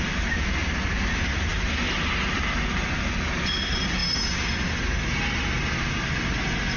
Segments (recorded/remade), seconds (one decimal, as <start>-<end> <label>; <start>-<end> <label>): 0.0-6.8 recorded